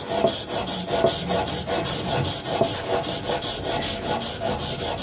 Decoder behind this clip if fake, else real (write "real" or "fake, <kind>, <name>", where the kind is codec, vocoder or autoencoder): real